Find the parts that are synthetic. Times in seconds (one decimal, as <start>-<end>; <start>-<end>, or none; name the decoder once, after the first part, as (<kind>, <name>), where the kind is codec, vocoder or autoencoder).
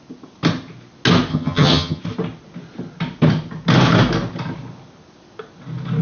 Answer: 1.3-2.0 (vocoder, HiFi-GAN)